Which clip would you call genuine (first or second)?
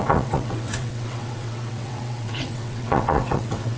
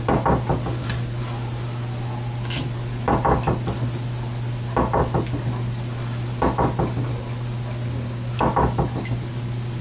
second